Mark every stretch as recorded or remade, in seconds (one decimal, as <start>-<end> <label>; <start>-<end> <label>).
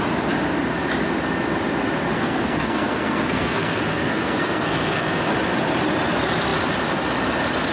0.0-2.1 recorded; 2.1-5.3 remade; 5.3-7.7 recorded